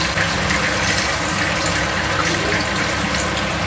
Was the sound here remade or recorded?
recorded